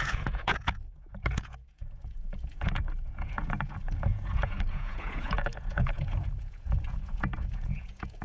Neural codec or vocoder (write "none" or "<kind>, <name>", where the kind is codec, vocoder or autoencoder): vocoder, Vocos